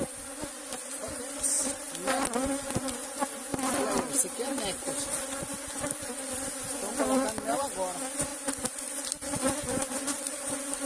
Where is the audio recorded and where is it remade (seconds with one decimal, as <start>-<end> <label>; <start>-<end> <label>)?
0.0-10.9 recorded